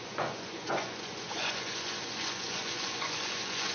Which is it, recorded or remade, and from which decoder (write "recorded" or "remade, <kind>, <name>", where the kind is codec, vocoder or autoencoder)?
remade, vocoder, Vocos